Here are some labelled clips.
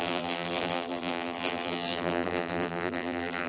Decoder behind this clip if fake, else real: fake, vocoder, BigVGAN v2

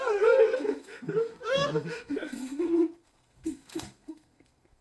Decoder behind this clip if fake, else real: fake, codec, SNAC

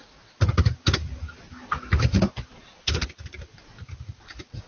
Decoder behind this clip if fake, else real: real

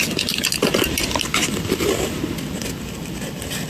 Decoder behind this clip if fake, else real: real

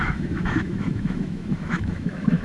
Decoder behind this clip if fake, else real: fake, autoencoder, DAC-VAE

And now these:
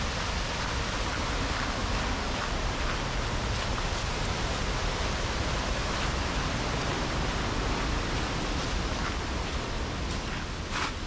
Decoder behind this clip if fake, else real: real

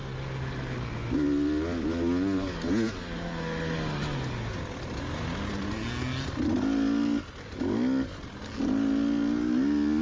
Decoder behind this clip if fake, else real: real